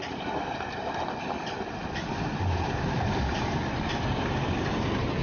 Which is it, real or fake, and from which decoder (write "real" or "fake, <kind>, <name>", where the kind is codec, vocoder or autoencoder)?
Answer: real